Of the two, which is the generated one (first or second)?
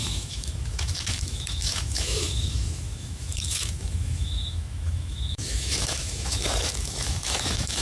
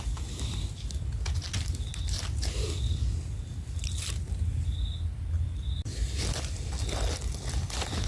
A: first